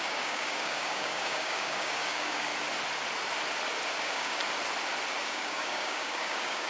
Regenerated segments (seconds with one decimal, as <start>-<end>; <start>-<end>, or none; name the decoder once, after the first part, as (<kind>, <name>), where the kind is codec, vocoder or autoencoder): 0.0-2.5 (codec, DAC); 4.0-4.4; 5.2-6.7